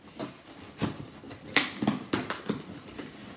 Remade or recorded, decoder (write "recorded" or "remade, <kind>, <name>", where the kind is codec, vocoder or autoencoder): recorded